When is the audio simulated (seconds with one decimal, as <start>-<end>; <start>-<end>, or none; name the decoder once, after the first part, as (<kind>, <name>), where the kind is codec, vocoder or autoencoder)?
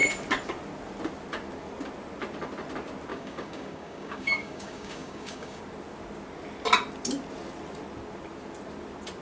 3.1-5.6 (codec, DAC)